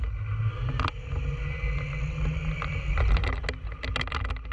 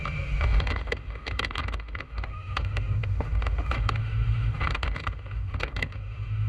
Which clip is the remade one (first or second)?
second